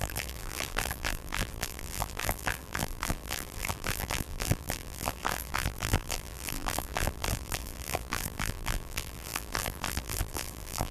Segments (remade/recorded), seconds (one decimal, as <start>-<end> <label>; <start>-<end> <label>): 0.0-10.9 remade